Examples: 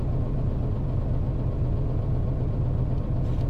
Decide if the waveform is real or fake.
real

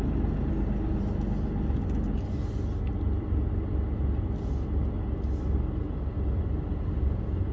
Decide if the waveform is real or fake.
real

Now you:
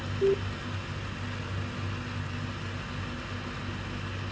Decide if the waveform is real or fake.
real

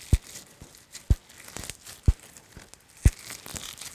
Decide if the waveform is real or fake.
real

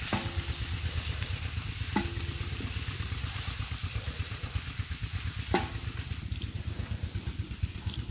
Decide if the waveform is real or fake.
real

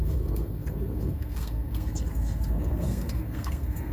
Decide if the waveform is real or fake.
fake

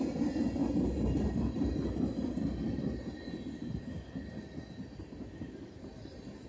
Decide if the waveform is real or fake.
real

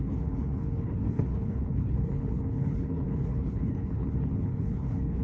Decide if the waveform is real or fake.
fake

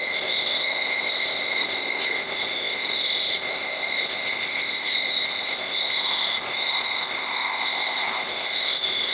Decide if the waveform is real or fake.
fake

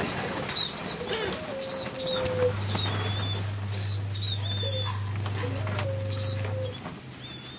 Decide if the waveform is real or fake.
real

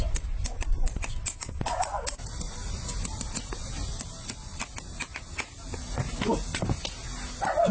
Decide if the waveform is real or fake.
real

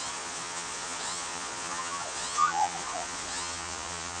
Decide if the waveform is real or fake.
fake